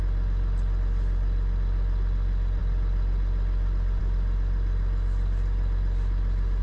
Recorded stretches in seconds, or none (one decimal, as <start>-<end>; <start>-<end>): 0.0-6.6